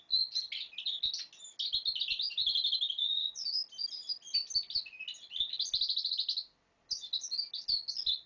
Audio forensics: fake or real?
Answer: real